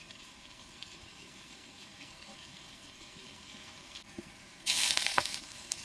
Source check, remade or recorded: remade